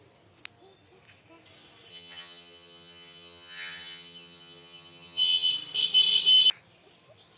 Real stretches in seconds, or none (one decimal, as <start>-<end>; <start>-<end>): 0.0-1.9; 5.5-7.4

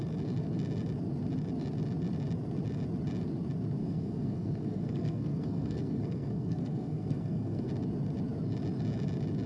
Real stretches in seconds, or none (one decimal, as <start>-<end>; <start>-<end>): 0.0-3.8; 7.7-9.5